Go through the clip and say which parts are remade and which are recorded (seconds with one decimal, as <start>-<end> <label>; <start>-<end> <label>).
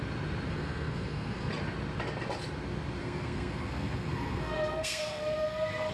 0.0-0.5 recorded; 0.5-1.5 remade; 1.5-3.0 recorded; 3.0-5.9 remade